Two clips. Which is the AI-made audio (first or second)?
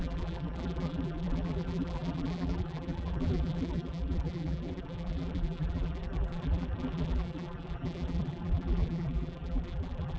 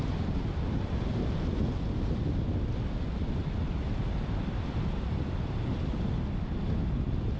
first